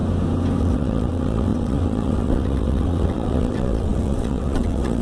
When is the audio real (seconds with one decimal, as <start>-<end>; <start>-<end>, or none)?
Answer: 0.0-0.6